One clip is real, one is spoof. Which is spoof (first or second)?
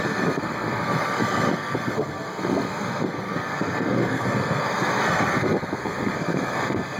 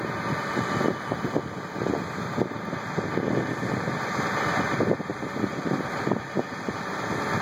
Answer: first